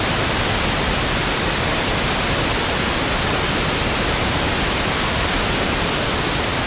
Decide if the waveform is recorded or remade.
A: recorded